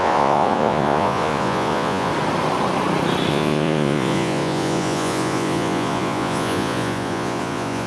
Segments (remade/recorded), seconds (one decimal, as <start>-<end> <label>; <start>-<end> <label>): 0.0-2.1 remade; 2.1-3.3 recorded; 3.3-7.9 remade